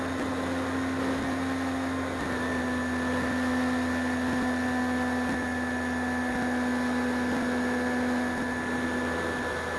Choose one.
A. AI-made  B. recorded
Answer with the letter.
B